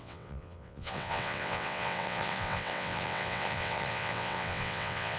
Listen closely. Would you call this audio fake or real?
fake